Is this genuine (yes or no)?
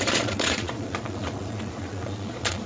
no